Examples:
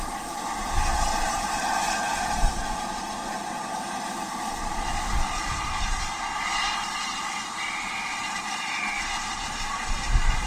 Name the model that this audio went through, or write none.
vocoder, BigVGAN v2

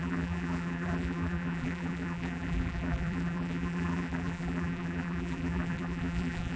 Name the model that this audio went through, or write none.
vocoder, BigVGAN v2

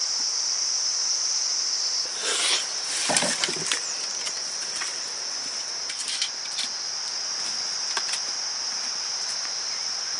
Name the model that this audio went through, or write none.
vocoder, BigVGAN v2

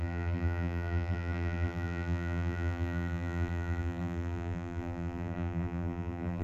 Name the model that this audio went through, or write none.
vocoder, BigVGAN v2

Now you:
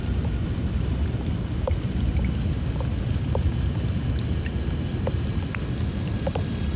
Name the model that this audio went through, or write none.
none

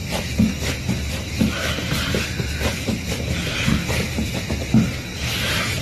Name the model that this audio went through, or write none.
none